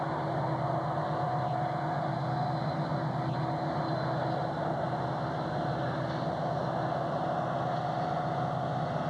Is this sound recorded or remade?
recorded